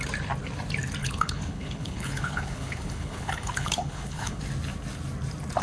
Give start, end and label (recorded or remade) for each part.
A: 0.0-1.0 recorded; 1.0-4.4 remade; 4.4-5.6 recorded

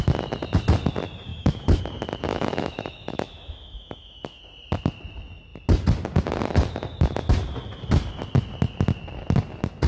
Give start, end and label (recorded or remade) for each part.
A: 0.0-1.3 recorded; 1.3-1.8 remade; 1.8-2.3 recorded; 2.3-4.4 remade; 4.4-9.9 recorded

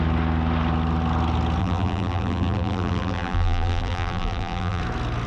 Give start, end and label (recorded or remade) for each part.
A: 0.0-1.6 recorded; 1.6-4.8 remade; 4.8-5.3 recorded

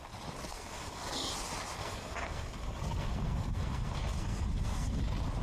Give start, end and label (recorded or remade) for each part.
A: 0.0-0.5 recorded; 0.5-1.3 remade; 1.3-1.8 recorded; 1.8-5.0 remade; 5.0-5.4 recorded

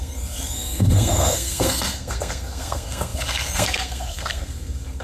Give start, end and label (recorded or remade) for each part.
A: 0.0-5.0 remade